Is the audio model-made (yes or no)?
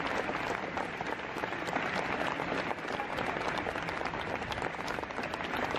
no